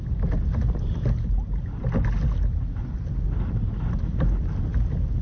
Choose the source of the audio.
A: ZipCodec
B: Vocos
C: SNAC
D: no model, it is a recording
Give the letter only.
D